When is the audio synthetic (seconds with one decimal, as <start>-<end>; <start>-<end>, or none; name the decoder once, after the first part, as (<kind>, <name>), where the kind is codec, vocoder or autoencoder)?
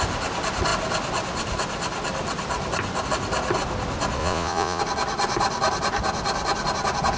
4.2-4.8 (vocoder, Vocos)